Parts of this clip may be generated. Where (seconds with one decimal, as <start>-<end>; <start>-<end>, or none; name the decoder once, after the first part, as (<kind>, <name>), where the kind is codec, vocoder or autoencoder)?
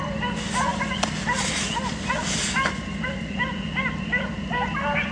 none